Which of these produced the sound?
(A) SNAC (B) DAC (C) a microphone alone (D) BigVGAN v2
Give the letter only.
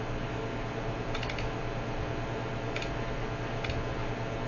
C